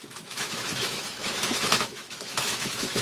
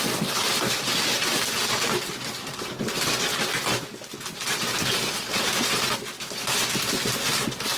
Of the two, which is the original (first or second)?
second